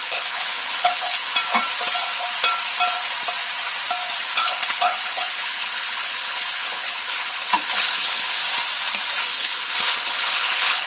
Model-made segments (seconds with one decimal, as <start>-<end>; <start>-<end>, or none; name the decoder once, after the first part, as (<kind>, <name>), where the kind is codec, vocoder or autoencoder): 0.0-1.3 (codec, HILCodec); 4.2-8.4; 9.2-10.9